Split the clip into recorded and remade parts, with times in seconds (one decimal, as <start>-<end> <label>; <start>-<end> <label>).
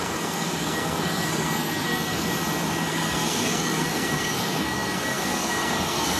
0.0-2.3 remade; 2.3-2.9 recorded; 2.9-6.2 remade